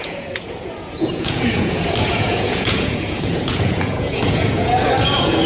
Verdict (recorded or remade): remade